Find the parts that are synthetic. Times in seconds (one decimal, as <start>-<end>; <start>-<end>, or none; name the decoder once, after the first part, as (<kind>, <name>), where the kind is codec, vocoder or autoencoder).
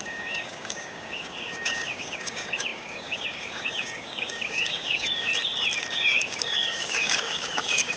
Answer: 0.0-5.3 (codec, DAC); 5.9-8.0